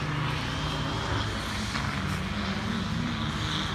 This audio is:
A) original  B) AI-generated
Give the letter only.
A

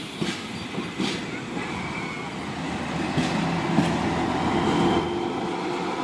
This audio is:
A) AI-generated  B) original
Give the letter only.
B